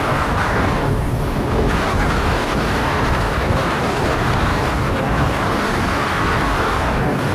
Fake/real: fake